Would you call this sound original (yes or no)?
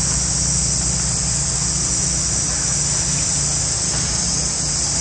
yes